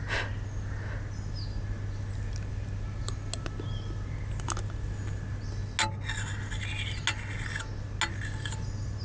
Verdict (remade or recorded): recorded